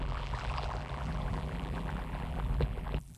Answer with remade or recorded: remade